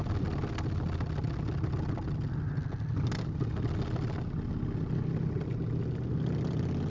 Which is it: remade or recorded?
recorded